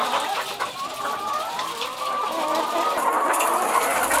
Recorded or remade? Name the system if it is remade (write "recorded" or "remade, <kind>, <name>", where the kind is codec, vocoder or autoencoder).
recorded